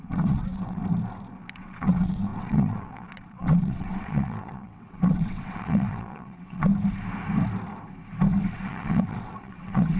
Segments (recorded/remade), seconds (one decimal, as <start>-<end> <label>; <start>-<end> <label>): 0.0-0.8 remade; 0.8-1.6 recorded; 1.6-6.7 remade; 6.7-8.5 recorded; 8.5-10.0 remade